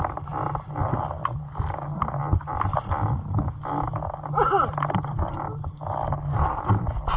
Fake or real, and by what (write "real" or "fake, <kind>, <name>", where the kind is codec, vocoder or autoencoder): real